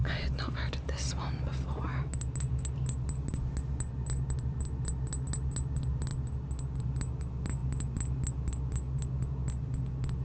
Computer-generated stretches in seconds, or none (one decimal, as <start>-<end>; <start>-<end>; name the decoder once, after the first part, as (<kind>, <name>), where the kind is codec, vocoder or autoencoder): none